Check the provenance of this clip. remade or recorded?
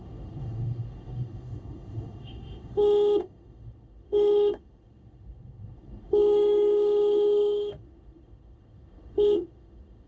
remade